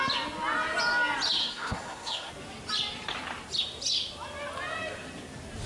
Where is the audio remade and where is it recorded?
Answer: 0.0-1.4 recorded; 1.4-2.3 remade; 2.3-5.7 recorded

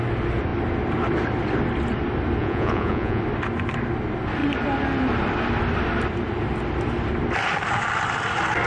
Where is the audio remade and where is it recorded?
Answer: 0.0-2.4 recorded; 2.4-3.2 remade; 3.2-8.7 recorded

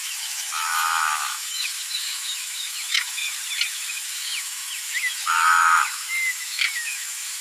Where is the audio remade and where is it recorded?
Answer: 0.0-3.2 remade; 3.2-3.7 recorded; 3.7-7.4 remade